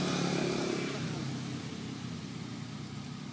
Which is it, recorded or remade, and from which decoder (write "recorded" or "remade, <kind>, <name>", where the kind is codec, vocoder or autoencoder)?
recorded